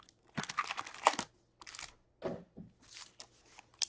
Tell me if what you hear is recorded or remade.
recorded